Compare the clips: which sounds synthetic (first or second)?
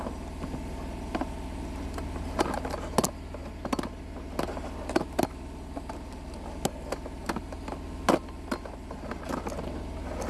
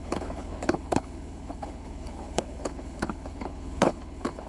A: second